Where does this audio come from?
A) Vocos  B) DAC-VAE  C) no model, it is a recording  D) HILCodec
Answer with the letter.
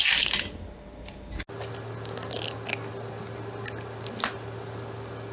C